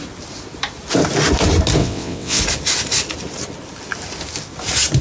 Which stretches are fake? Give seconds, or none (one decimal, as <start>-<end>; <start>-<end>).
1.8-2.4